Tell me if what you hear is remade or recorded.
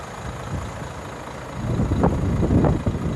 recorded